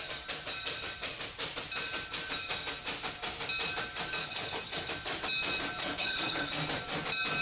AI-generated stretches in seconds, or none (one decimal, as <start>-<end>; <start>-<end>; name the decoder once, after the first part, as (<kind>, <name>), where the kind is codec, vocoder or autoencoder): 4.2-4.9 (codec, HILCodec); 5.8-6.5